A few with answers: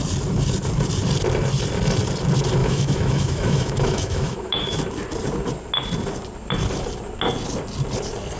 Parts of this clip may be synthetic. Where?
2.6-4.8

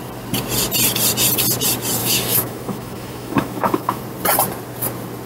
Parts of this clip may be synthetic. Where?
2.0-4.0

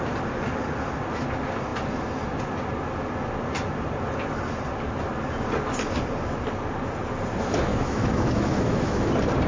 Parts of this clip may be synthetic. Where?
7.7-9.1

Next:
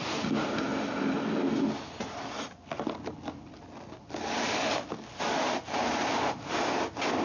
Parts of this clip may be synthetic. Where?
none

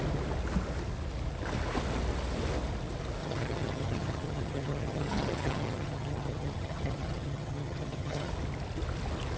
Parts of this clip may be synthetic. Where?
3.2-8.3